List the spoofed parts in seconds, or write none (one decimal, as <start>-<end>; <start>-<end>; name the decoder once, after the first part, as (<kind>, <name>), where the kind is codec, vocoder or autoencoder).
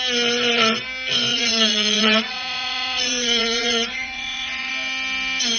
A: 1.3-4.7 (vocoder, Vocos)